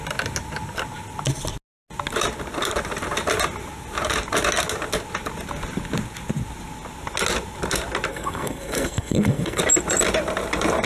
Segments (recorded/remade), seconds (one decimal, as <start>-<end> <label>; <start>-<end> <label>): 0.0-8.1 recorded; 8.1-9.6 remade; 9.6-10.9 recorded